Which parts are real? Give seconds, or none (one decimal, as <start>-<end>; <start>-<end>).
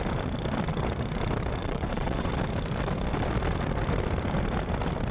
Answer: 0.0-1.6; 2.3-5.1